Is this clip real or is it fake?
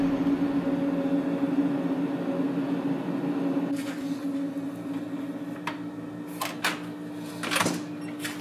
real